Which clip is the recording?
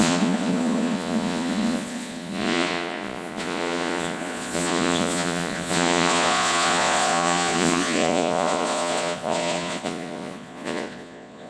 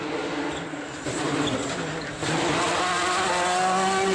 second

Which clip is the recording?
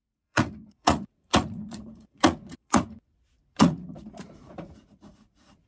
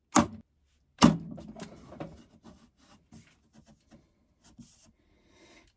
second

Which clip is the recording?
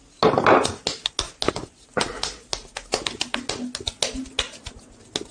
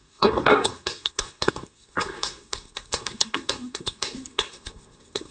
first